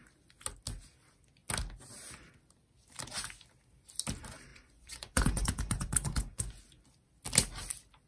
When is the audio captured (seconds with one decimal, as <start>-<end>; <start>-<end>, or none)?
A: 0.0-4.5; 6.6-8.1